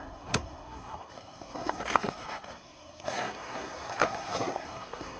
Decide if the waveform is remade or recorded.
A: remade